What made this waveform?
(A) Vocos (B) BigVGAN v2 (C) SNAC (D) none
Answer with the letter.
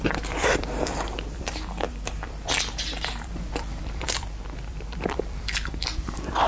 B